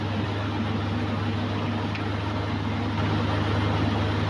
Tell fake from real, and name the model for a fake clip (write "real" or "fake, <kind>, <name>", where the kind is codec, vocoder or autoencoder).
real